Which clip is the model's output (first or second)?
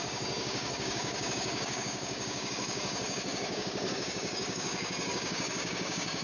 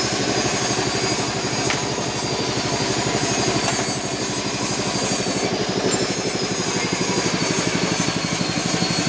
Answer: first